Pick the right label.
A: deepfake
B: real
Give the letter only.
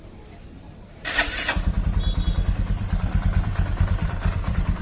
A